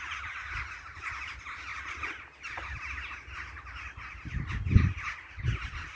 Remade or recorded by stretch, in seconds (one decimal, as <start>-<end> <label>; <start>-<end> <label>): 0.0-6.0 recorded